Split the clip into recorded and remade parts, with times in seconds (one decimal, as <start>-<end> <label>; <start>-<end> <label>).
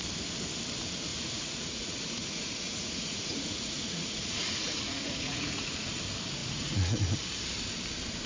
0.0-1.1 recorded; 1.1-5.9 remade; 5.9-6.4 recorded; 6.4-7.0 remade; 7.0-8.3 recorded